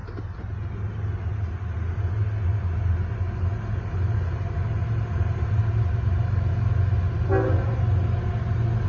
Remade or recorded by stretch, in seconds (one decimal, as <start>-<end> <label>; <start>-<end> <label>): 0.0-8.9 recorded